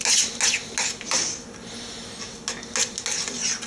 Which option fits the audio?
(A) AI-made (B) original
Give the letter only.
B